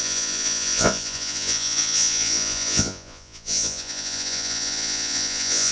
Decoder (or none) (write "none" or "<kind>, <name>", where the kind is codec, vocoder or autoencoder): vocoder, Vocos